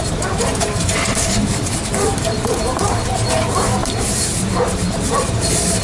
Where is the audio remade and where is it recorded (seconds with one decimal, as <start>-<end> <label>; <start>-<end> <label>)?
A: 0.0-5.8 remade